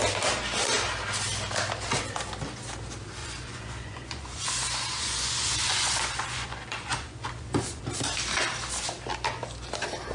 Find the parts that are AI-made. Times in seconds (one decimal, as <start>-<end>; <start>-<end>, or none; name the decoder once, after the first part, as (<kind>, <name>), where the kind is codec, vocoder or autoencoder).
3.2-7.8 (vocoder, Vocos)